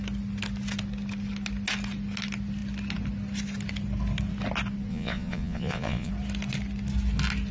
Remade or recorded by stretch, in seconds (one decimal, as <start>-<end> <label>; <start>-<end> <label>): 0.0-4.9 recorded; 4.9-6.1 remade; 6.1-7.5 recorded

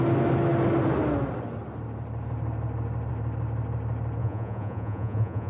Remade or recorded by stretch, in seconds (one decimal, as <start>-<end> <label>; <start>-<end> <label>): 0.0-4.2 recorded; 4.2-5.5 remade

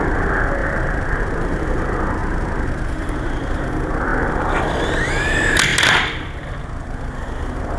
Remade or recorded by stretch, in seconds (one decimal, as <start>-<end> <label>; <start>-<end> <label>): 0.0-0.6 recorded; 0.6-1.8 remade; 1.8-2.2 recorded; 2.2-3.6 remade; 3.6-4.1 recorded; 4.1-5.1 remade; 5.1-7.8 recorded

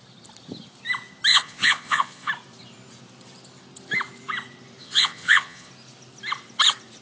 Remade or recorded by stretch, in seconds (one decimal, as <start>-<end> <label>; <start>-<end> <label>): 0.0-1.3 recorded; 1.3-2.3 remade; 2.3-4.8 recorded; 4.8-5.7 remade; 5.7-7.0 recorded

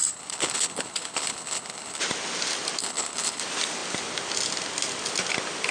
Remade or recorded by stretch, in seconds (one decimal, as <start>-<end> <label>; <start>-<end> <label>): 0.0-2.0 remade; 2.0-2.8 recorded; 2.8-3.4 remade; 3.4-5.7 recorded

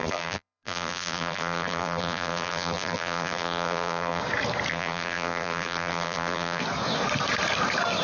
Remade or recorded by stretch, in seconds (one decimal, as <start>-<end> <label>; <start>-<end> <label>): 0.0-4.2 remade; 4.2-4.7 recorded; 4.7-6.6 remade; 6.6-8.0 recorded

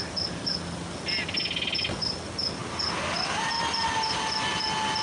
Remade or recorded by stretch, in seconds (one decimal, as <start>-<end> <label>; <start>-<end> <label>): 0.0-5.0 recorded